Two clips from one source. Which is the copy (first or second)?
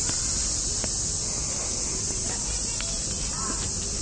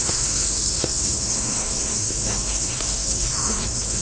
second